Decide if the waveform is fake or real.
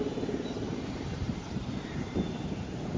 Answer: fake